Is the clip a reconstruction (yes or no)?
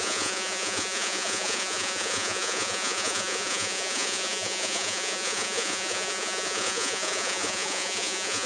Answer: yes